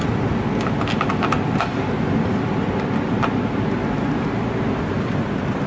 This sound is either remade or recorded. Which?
recorded